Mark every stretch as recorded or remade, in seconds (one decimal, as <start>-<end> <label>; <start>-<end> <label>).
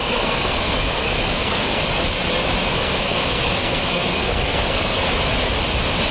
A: 0.0-1.8 remade; 1.8-2.7 recorded; 2.7-5.1 remade; 5.1-6.1 recorded